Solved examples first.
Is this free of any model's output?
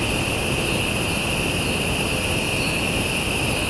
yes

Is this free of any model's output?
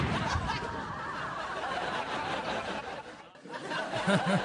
yes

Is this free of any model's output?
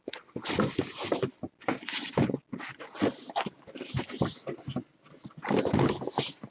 yes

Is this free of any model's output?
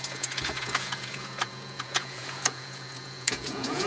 no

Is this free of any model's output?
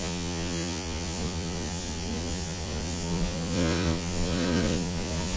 no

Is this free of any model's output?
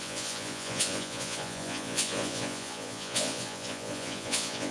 no